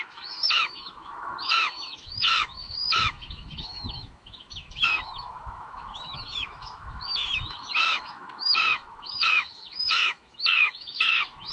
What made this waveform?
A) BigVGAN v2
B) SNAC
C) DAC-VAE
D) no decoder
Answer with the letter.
C